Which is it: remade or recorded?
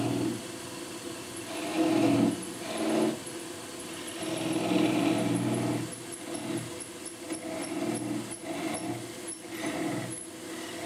recorded